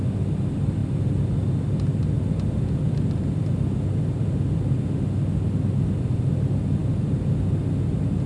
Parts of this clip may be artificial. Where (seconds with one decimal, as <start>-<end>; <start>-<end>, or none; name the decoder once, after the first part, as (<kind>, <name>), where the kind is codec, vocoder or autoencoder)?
none